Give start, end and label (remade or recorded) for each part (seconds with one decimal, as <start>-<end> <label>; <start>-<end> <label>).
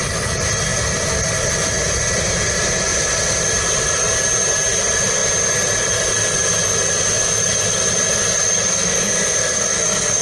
0.0-8.7 recorded; 8.7-10.2 remade